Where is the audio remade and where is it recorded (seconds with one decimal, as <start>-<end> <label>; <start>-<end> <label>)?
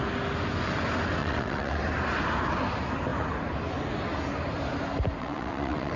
0.0-1.2 recorded; 1.2-1.8 remade; 1.8-5.2 recorded; 5.2-6.0 remade